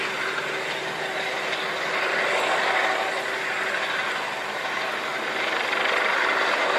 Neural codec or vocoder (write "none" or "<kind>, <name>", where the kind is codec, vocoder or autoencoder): none